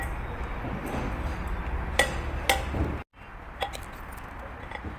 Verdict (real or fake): real